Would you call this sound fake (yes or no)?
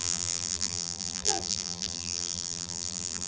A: yes